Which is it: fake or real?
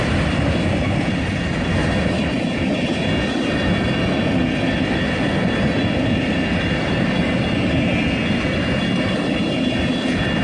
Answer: real